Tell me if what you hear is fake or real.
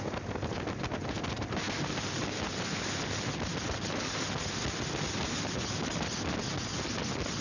real